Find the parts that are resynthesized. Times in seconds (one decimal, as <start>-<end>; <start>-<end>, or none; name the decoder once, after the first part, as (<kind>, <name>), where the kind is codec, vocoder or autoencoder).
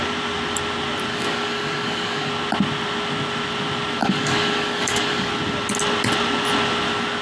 1.1-2.3 (codec, DAC); 4.0-5.3